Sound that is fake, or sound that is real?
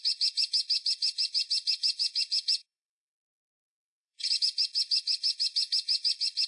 fake